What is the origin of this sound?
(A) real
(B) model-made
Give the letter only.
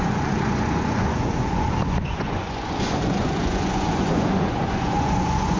B